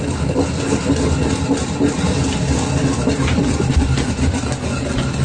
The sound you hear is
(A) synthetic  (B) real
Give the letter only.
B